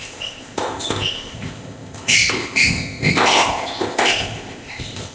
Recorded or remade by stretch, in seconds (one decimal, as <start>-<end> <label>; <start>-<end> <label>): 0.0-5.1 remade